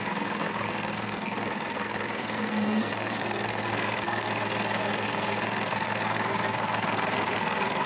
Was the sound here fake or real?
fake